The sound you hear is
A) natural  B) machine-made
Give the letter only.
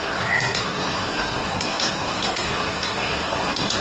B